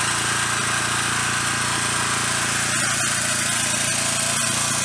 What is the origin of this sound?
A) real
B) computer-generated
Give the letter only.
A